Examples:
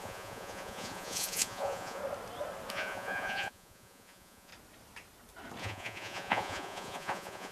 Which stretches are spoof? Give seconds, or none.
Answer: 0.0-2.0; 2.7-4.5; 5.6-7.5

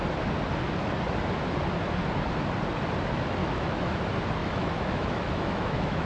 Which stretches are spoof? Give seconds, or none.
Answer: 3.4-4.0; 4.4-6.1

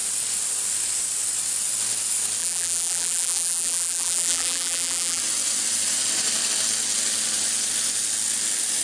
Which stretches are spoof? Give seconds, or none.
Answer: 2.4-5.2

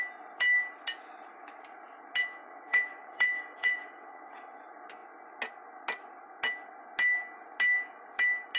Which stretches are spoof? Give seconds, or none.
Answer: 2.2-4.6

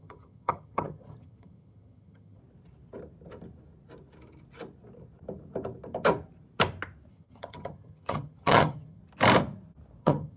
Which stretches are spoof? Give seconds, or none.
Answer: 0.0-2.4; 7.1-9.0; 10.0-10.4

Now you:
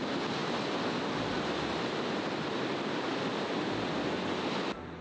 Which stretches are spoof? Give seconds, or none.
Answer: none

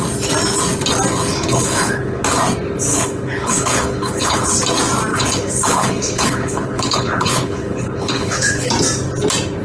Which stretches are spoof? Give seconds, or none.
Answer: 1.3-2.2; 2.9-4.5; 5.1-8.7

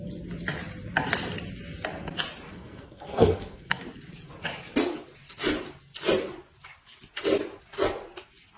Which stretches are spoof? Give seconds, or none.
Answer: 2.5-3.8